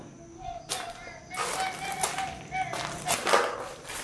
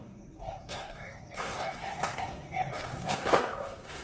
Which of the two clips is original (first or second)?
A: first